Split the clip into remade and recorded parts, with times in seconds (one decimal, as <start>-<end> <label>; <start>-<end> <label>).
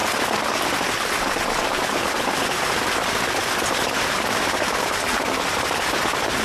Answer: 0.0-1.2 recorded; 1.2-3.0 remade; 3.0-3.7 recorded; 3.7-6.4 remade